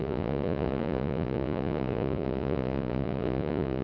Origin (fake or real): fake